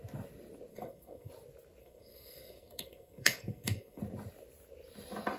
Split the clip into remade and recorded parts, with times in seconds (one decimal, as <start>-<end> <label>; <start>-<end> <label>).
0.0-0.7 recorded; 0.7-1.3 remade; 1.3-1.8 recorded; 1.8-4.0 remade; 4.0-5.4 recorded